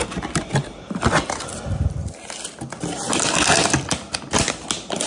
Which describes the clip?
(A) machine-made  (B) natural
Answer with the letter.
B